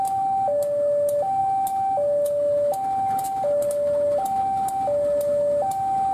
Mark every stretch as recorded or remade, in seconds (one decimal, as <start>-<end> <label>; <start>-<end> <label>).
0.0-6.1 recorded